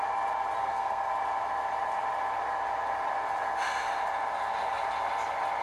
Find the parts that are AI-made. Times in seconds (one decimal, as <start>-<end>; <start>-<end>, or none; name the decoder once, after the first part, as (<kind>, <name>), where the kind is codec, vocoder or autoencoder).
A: 0.6-1.1 (codec, SNAC)